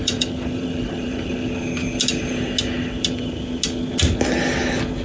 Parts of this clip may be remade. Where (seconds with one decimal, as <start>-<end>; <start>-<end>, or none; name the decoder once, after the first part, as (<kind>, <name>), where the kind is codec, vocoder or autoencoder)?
0.0-1.3 (vocoder, BigVGAN v2)